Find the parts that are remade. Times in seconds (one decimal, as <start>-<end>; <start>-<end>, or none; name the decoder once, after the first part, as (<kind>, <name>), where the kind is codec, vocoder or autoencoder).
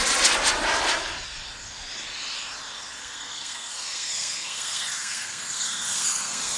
3.0-6.6 (codec, SNAC)